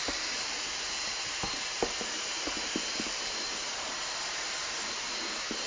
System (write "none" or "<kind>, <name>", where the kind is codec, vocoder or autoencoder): vocoder, BigVGAN v2